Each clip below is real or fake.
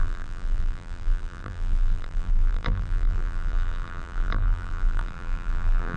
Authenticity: fake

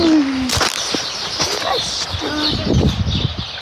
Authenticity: real